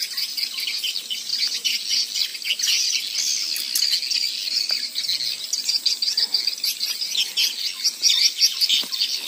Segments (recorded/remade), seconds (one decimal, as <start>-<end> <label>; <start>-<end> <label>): 0.0-1.3 recorded; 1.3-1.8 remade; 1.8-9.3 recorded